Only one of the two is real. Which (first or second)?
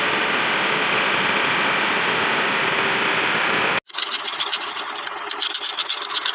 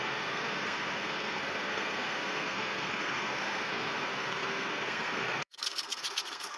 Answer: first